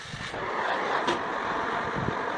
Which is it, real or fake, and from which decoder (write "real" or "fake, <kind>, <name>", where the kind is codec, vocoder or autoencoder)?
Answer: real